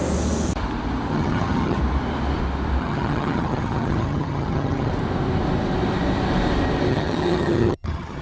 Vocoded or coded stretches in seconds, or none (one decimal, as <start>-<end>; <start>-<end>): 1.1-1.8; 2.8-4.9; 6.9-8.2

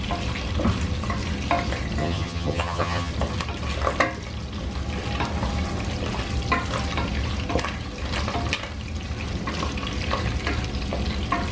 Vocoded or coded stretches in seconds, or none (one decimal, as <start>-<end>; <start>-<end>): 2.0-3.1

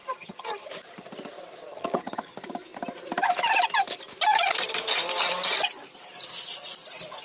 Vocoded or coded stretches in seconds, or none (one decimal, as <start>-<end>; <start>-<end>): 0.0-0.7; 1.7-2.3

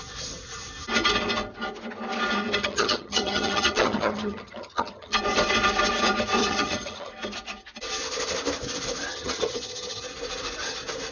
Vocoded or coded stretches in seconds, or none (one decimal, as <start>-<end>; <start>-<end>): 2.6-5.2; 6.4-7.1; 9.1-10.0